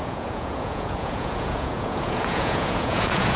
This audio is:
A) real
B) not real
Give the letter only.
B